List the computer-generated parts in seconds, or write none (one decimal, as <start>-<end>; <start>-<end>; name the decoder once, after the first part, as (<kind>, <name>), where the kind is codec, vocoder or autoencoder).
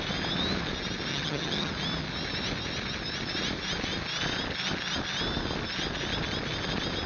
1.1-1.7 (vocoder, HiFi-GAN)